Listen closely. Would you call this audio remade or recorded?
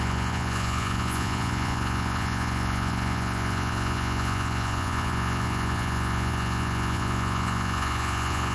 remade